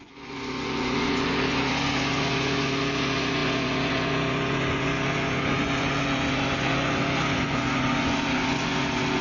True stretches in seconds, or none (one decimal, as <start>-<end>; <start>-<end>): none